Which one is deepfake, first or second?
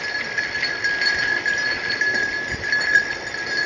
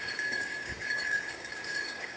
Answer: second